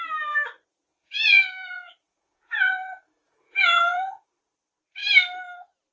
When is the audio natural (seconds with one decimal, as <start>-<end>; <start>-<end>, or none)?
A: 0.0-0.9; 4.4-5.9